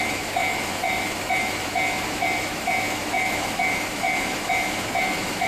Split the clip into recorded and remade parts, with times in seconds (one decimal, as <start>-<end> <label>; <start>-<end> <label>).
0.0-5.5 remade